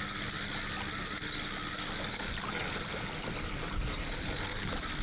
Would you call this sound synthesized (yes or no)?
no